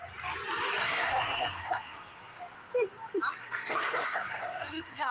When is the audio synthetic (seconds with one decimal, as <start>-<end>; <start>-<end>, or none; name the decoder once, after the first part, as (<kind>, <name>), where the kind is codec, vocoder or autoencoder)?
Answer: 0.8-2.4 (codec, SNAC); 3.4-5.1